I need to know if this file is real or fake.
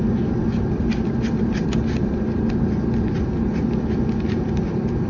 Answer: real